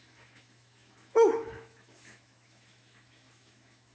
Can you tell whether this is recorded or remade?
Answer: remade